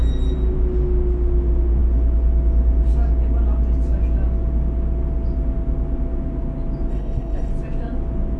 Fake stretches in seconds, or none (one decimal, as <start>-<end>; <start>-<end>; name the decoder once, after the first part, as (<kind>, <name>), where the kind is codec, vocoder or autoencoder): 6.9-7.5 (codec, HILCodec)